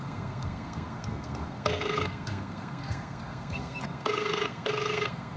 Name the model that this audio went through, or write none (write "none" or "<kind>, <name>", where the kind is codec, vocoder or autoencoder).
codec, SNAC